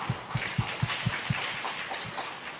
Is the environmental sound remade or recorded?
recorded